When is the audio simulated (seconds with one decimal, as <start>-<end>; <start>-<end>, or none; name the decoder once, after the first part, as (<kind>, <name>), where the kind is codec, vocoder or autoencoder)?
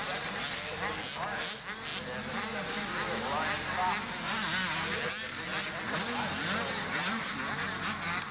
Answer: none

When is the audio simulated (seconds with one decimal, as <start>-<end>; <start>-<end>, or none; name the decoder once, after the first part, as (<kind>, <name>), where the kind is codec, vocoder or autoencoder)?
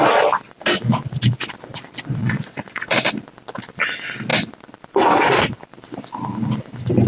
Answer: 2.2-3.1 (vocoder, Vocos)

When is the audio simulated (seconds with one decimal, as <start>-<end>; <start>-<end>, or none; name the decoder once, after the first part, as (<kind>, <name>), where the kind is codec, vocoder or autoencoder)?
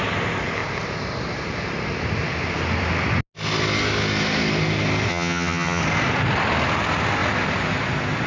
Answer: 5.1-5.8 (vocoder, HiFi-GAN)